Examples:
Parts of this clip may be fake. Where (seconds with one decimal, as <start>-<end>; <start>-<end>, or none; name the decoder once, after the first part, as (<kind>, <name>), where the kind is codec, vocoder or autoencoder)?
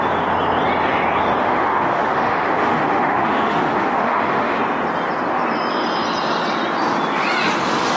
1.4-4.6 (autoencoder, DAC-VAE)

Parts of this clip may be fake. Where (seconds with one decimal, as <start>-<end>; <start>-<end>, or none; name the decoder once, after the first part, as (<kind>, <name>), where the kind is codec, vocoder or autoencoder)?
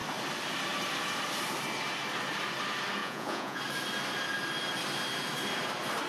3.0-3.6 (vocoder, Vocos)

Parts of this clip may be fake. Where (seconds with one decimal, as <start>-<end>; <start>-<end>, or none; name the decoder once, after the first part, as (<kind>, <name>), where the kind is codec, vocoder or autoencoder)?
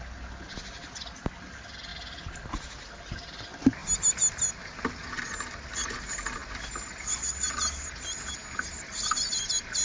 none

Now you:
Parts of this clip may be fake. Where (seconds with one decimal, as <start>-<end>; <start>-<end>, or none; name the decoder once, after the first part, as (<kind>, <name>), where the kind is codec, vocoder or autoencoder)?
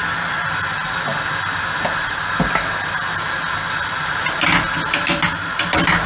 none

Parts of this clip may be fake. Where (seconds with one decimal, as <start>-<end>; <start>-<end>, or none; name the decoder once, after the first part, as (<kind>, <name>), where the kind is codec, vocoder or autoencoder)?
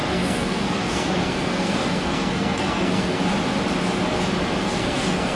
0.0-3.2 (codec, SNAC); 4.6-5.4